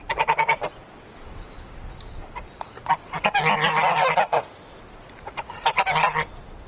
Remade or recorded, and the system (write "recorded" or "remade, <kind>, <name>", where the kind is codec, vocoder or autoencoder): recorded